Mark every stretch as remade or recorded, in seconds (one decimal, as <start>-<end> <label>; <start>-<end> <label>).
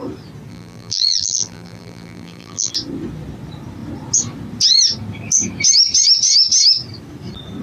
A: 0.0-0.5 recorded; 0.5-2.7 remade; 2.7-7.6 recorded